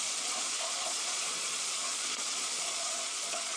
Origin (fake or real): fake